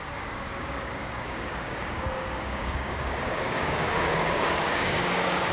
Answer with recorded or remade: remade